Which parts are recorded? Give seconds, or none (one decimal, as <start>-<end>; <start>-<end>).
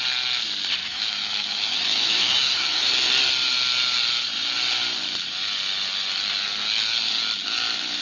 0.0-0.8; 2.9-8.0